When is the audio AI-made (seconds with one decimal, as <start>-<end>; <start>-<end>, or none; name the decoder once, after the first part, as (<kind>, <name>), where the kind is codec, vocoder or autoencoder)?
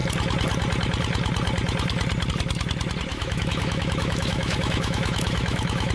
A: 3.1-5.9 (autoencoder, DAC-VAE)